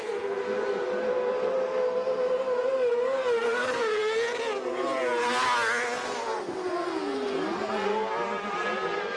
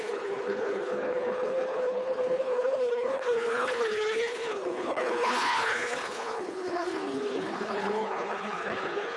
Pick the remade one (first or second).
second